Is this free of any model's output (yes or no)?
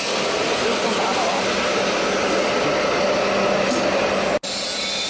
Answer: yes